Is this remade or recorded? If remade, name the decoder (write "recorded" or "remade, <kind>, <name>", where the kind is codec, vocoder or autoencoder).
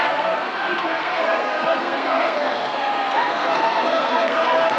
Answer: remade, codec, SNAC